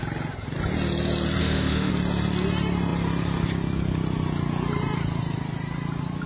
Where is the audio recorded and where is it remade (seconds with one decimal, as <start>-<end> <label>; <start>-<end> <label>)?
0.0-1.4 recorded; 1.4-1.9 remade; 1.9-6.3 recorded